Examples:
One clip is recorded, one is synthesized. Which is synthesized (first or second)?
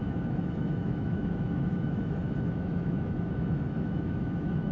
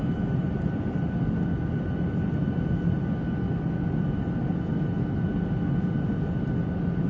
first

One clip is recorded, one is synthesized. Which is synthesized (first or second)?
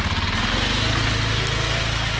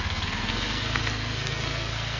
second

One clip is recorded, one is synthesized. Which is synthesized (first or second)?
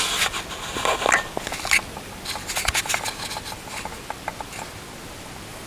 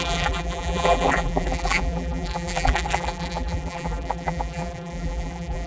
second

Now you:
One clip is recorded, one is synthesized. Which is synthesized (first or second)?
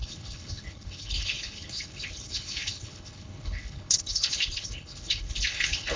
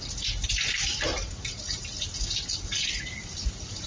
first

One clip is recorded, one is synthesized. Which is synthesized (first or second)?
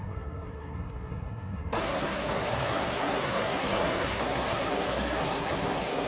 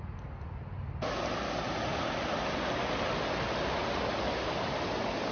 first